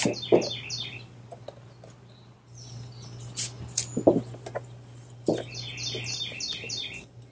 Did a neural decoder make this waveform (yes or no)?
no